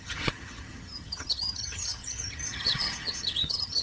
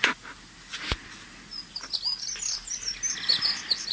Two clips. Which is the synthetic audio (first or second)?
first